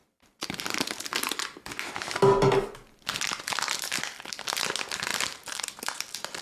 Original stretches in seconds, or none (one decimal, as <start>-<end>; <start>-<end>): 0.0-6.4